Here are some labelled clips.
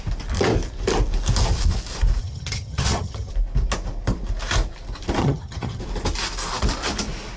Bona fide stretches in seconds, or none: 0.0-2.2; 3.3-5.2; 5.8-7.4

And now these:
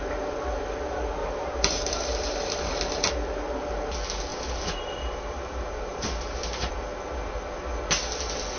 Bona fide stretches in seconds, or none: 0.0-1.2; 2.7-4.3; 6.7-8.6

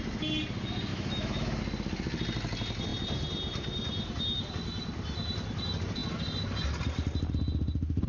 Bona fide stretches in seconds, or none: 0.0-0.9; 1.6-8.1

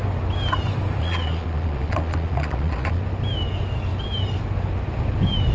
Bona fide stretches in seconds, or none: 0.0-1.0; 3.0-5.5